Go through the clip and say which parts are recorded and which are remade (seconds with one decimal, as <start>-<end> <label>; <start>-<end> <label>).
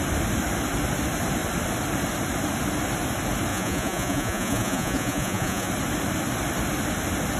0.0-3.5 recorded; 3.5-5.7 remade; 5.7-7.4 recorded